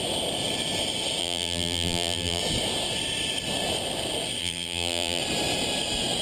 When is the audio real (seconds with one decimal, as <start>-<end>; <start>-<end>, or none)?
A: 0.0-1.2; 2.4-4.4; 5.2-6.2